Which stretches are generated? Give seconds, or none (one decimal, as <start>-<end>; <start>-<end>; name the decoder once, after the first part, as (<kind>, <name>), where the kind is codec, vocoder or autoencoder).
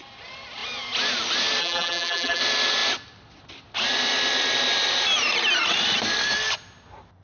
1.6-2.4 (vocoder, BigVGAN v2)